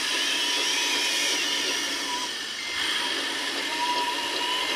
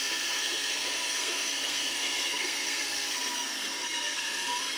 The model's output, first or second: second